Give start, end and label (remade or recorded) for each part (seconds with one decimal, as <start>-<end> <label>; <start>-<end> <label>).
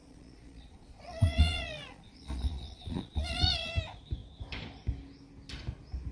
0.0-3.7 remade; 3.7-6.1 recorded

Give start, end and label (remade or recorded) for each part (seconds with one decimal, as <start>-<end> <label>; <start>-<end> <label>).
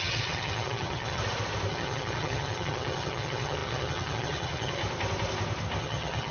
0.0-1.2 remade; 1.2-1.7 recorded; 1.7-4.8 remade; 4.8-5.8 recorded; 5.8-6.3 remade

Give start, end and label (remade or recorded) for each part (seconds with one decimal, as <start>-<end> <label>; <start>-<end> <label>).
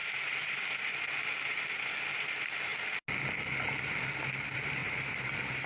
0.0-1.5 recorded; 1.5-2.7 remade; 2.7-3.8 recorded; 3.8-4.8 remade; 4.8-5.7 recorded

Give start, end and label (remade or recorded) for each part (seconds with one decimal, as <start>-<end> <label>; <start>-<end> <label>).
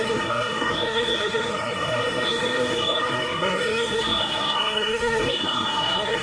0.0-6.2 remade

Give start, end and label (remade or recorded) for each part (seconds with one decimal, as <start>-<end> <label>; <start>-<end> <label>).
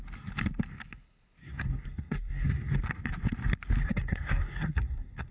0.0-1.4 recorded; 1.4-2.8 remade; 2.8-3.8 recorded; 3.8-5.3 remade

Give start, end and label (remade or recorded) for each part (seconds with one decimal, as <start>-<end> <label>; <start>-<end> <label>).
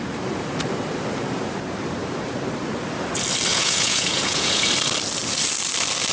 0.0-3.5 recorded; 3.5-4.7 remade; 4.7-6.1 recorded